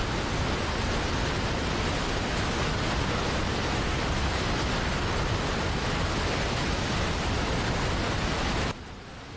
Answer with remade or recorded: recorded